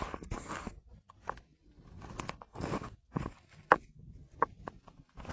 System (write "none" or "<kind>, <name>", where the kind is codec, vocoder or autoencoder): none